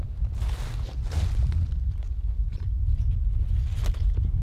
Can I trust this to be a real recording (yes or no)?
yes